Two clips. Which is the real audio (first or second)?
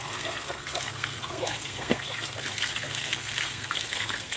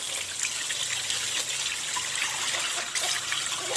second